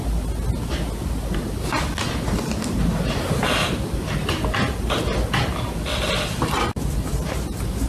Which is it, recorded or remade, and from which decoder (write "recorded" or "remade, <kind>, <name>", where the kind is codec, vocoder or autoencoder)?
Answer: recorded